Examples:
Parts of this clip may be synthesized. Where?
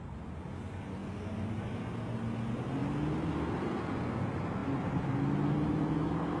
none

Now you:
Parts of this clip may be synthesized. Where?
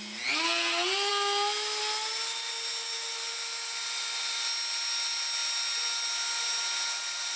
none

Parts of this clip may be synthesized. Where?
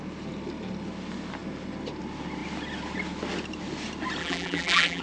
4.2-5.0 (vocoder, BigVGAN v2)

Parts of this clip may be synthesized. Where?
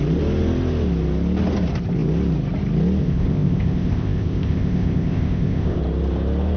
3.0-5.8 (codec, ZipCodec)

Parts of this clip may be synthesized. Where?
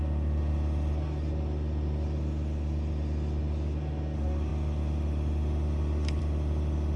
none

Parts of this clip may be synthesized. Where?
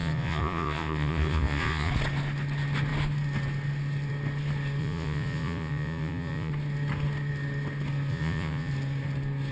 0.0-1.9 (vocoder, Vocos); 4.8-6.5; 8.1-8.7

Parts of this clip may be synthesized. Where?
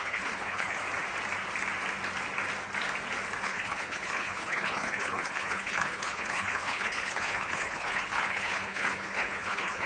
0.0-0.8 (codec, HILCodec); 3.4-9.9